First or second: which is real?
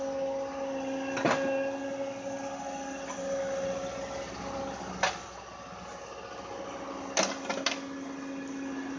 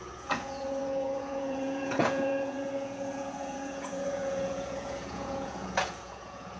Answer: first